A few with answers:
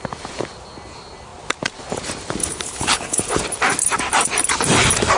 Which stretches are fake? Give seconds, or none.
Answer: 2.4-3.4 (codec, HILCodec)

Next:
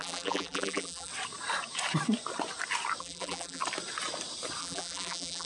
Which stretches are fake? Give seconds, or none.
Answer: 0.0-1.1 (vocoder, BigVGAN v2); 3.0-3.6; 4.6-5.5

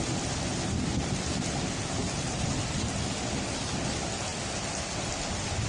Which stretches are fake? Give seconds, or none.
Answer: none

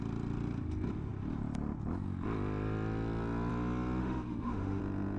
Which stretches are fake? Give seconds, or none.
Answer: 4.0-4.8 (autoencoder, DAC-VAE)

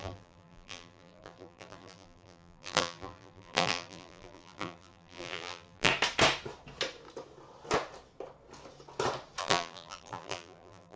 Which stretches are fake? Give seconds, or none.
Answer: 0.0-5.9 (vocoder, BigVGAN v2); 9.4-11.0

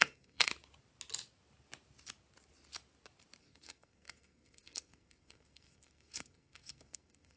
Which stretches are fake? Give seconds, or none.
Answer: 0.0-0.5 (codec, SNAC); 3.4-7.4

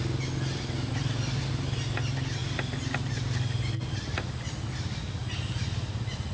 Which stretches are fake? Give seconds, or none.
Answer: none